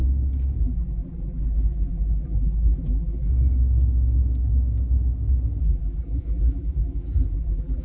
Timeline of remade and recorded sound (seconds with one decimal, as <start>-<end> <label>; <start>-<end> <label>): 0.0-0.6 recorded; 0.6-3.3 remade; 3.3-5.6 recorded; 5.6-7.8 remade